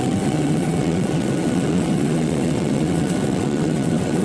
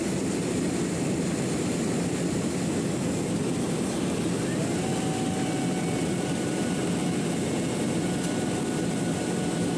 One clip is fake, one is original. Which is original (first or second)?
second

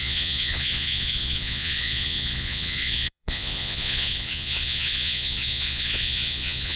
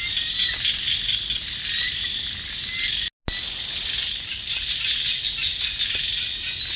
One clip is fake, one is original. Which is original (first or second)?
second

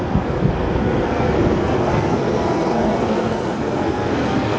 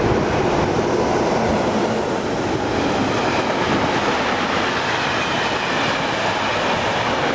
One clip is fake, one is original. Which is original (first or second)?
second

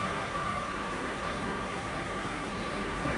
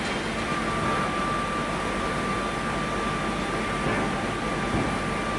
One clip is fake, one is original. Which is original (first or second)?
second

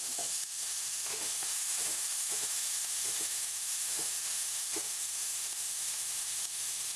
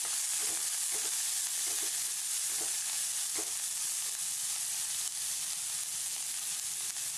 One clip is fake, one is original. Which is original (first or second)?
second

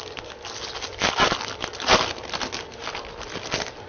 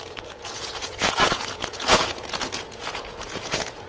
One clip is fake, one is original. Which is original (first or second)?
first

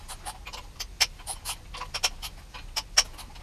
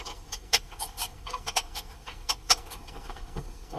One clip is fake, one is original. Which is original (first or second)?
first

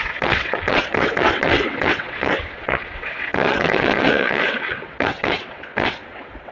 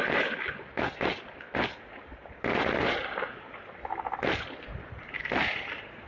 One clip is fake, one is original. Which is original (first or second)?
second